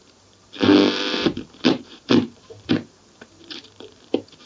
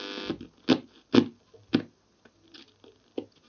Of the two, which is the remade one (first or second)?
first